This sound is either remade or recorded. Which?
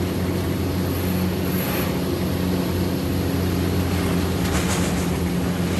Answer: recorded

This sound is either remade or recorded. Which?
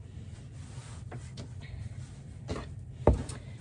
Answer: remade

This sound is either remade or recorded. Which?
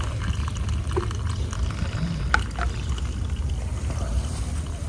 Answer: recorded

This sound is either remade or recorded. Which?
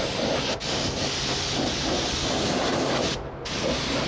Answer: recorded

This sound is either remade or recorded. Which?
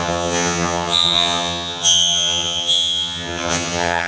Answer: remade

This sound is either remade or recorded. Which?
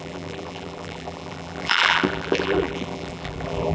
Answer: remade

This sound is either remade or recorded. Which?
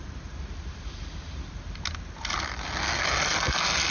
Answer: recorded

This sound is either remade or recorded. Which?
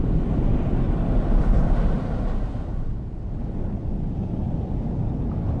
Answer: recorded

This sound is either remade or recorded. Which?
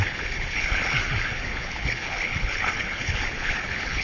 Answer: remade